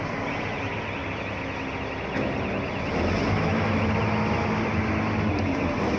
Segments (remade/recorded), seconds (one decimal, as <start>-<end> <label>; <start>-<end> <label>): 0.0-6.0 recorded